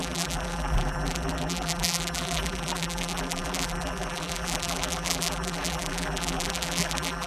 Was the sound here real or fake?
fake